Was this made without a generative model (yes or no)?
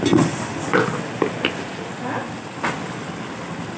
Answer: yes